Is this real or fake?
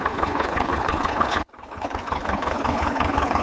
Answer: fake